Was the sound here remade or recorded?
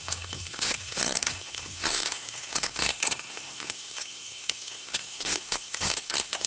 remade